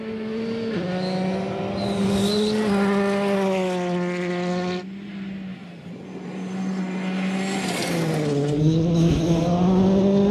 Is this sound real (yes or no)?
yes